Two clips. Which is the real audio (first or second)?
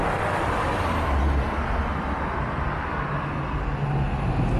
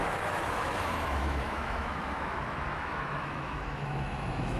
first